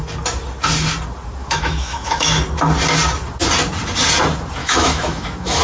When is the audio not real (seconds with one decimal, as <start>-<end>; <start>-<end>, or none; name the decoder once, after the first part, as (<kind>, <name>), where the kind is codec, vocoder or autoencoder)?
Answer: 1.4-2.4 (autoencoder, DAC-VAE); 4.6-5.6